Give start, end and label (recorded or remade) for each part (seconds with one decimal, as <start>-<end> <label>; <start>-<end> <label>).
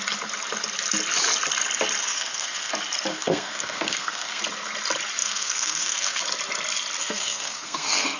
0.0-2.0 recorded; 2.0-2.7 remade; 2.7-3.1 recorded; 3.1-4.4 remade; 4.4-5.2 recorded; 5.2-6.2 remade; 6.2-7.0 recorded; 7.0-8.2 remade